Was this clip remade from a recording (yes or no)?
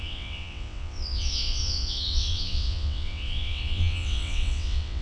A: yes